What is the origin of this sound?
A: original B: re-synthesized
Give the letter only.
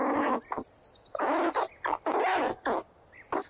A